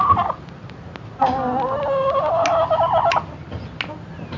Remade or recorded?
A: recorded